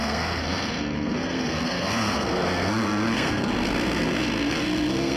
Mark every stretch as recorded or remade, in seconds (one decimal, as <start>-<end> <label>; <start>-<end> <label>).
0.0-5.2 remade